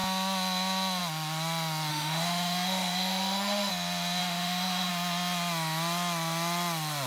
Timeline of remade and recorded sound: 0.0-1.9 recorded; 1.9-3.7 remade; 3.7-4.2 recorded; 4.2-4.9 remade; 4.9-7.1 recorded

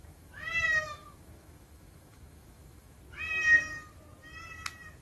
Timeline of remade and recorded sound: 0.0-3.0 remade; 3.0-5.0 recorded

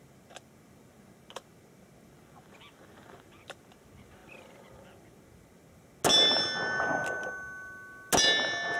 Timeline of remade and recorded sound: 0.0-8.8 recorded

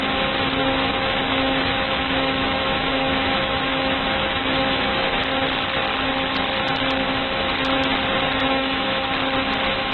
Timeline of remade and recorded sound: 0.0-0.6 recorded; 0.6-5.2 remade; 5.2-8.5 recorded; 8.5-9.0 remade; 9.0-9.9 recorded

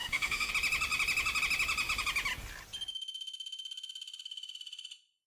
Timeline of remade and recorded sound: 0.0-0.5 remade; 0.5-5.3 recorded

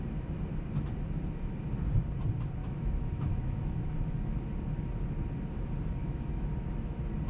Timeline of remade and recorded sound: 0.0-2.6 recorded; 2.6-4.1 remade; 4.1-6.0 recorded; 6.0-6.5 remade; 6.5-7.3 recorded